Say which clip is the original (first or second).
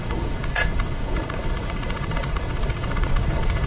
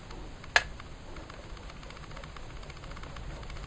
second